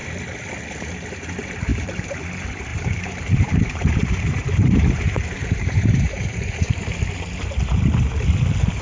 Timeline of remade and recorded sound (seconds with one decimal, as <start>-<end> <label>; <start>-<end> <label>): 0.0-1.7 recorded; 1.7-2.2 remade; 2.2-2.7 recorded; 2.7-6.8 remade; 6.8-8.8 recorded